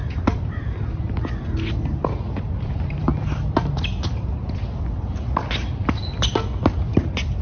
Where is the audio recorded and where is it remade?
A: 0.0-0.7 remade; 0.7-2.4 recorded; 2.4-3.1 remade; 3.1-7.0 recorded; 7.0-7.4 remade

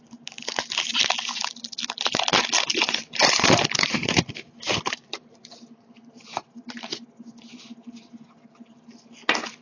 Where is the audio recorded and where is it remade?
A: 0.0-2.7 recorded; 2.7-5.2 remade; 5.2-6.2 recorded; 6.2-6.8 remade; 6.8-9.6 recorded

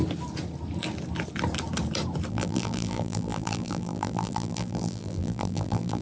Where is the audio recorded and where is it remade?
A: 0.0-2.3 recorded; 2.3-6.0 remade

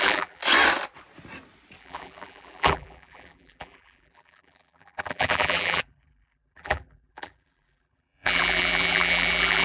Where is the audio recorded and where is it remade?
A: 0.0-0.4 remade; 0.4-1.8 recorded; 1.8-9.6 remade

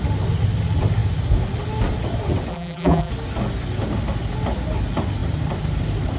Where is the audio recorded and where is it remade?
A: 0.0-2.5 recorded; 2.5-3.1 remade; 3.1-6.2 recorded

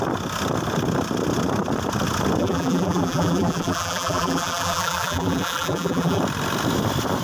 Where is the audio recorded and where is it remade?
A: 0.0-2.4 recorded; 2.4-6.2 remade; 6.2-7.2 recorded

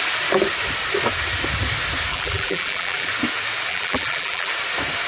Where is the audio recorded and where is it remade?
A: 0.0-2.1 recorded; 2.1-3.1 remade; 3.1-3.7 recorded; 3.7-4.5 remade; 4.5-5.1 recorded